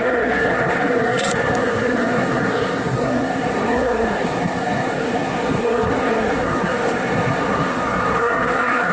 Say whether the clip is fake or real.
fake